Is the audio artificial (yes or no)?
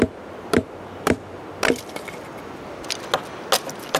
no